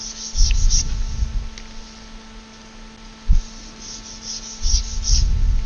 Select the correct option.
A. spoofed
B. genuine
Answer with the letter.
B